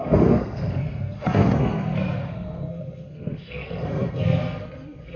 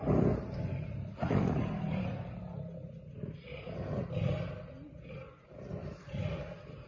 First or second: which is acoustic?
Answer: second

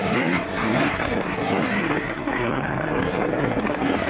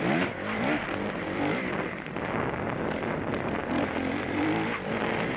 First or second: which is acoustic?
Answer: second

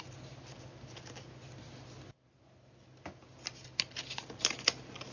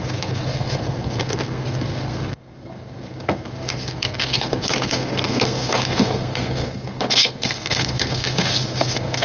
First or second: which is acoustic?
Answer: first